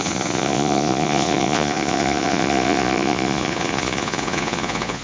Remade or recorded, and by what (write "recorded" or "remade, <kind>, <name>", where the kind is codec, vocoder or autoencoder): remade, vocoder, Vocos